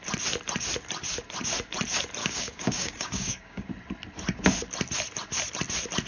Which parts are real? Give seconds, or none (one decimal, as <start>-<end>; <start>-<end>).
0.0-2.2; 3.7-6.1